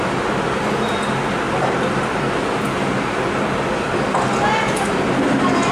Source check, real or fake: real